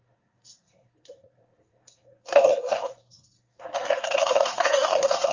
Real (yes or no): no